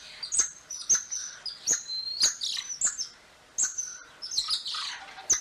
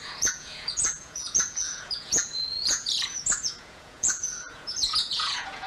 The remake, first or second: second